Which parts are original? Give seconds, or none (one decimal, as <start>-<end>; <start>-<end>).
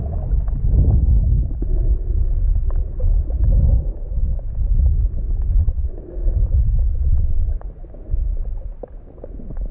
0.0-5.6; 6.1-6.9; 7.7-9.7